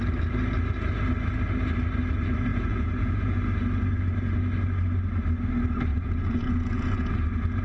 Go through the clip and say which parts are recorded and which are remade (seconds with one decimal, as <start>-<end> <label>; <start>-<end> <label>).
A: 0.0-2.5 recorded; 2.5-3.4 remade; 3.4-5.9 recorded; 5.9-7.1 remade; 7.1-7.6 recorded